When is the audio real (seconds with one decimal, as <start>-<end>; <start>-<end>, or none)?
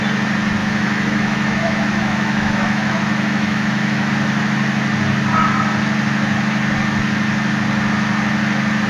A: 0.0-0.6; 4.1-8.9